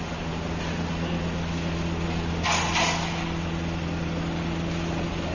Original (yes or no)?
yes